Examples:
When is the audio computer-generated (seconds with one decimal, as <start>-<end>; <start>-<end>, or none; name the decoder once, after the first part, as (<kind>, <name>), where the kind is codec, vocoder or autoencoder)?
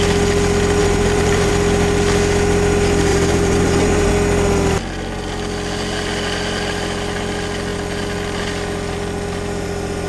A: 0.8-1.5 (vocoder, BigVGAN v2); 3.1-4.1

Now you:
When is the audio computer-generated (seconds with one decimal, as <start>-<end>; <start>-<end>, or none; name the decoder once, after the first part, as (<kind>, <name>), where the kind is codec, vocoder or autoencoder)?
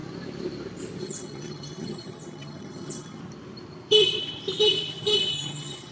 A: 1.0-3.2 (vocoder, HiFi-GAN); 5.3-5.9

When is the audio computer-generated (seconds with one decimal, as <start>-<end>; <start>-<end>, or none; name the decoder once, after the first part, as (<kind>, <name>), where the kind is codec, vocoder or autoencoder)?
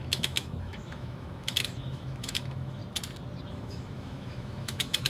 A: 0.0-2.8 (autoencoder, DAC-VAE); 3.5-5.1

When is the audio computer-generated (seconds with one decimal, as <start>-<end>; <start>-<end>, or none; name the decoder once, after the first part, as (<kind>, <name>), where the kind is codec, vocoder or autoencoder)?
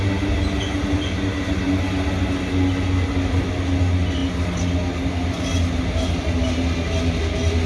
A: none